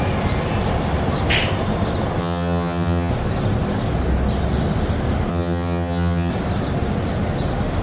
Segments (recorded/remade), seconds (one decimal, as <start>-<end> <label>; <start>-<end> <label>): 0.0-2.2 recorded; 2.2-3.1 remade; 3.1-5.3 recorded; 5.3-6.3 remade; 6.3-7.8 recorded